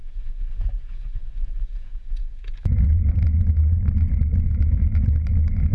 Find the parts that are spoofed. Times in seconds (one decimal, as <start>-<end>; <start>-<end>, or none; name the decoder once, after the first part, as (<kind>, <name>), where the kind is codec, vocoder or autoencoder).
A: 0.0-3.2 (vocoder, Vocos); 4.5-5.1

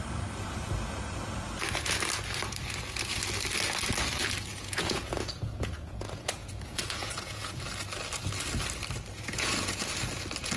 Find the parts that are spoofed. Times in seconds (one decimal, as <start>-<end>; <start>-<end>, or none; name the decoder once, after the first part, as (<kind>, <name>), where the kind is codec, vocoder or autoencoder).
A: 4.5-7.6 (vocoder, Vocos); 9.1-9.8